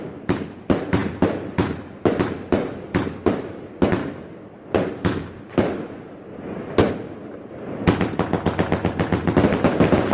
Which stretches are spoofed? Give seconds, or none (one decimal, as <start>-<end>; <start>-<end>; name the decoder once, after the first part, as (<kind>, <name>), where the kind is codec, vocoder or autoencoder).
4.0-4.7 (vocoder, BigVGAN v2); 7.2-8.3